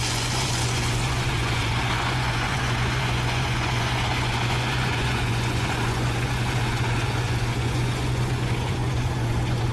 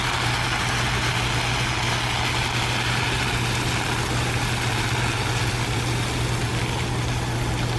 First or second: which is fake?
first